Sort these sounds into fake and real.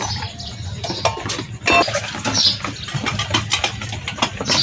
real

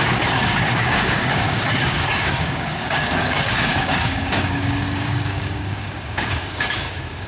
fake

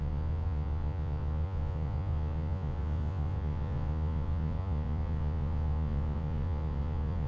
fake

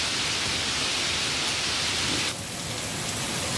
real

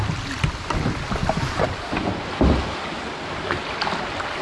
real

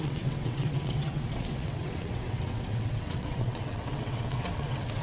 fake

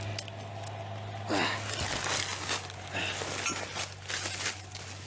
real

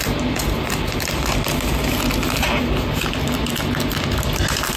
real